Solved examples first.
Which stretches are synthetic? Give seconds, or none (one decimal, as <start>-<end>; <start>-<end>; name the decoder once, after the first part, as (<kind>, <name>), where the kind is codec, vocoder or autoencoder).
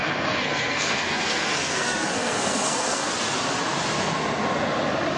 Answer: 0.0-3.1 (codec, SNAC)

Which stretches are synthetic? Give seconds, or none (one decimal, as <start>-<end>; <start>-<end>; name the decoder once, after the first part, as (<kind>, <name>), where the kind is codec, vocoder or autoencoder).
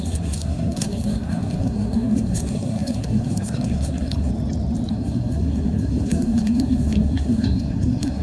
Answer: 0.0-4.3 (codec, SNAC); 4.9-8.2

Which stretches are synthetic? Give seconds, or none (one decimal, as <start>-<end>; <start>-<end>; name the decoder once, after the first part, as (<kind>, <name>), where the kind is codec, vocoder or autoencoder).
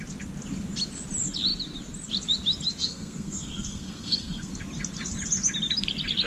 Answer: 2.8-4.5 (codec, SNAC)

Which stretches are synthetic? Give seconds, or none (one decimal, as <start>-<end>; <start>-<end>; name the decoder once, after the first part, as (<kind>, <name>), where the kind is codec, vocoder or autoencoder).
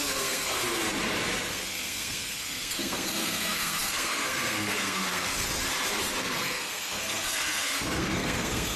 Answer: 0.0-0.6 (codec, SNAC); 1.5-5.5; 6.2-8.8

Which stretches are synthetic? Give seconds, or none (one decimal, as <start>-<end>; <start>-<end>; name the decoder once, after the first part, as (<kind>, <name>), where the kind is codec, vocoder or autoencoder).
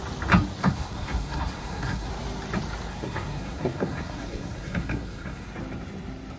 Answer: 0.6-2.1 (codec, SNAC); 2.9-5.5